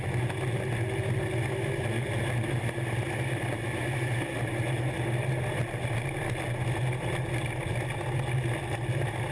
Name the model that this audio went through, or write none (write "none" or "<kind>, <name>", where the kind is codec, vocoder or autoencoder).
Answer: none